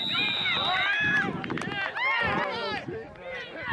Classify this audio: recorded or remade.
recorded